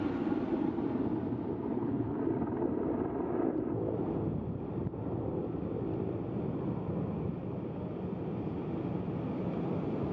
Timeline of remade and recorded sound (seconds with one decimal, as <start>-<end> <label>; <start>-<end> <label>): 0.0-1.7 recorded; 1.7-2.2 remade; 2.2-10.1 recorded